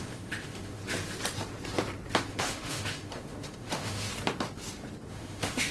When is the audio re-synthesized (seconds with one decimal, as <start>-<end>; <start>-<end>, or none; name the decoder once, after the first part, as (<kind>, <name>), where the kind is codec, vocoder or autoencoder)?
0.0-0.8 (autoencoder, DAC-VAE); 2.3-4.1; 5.1-5.7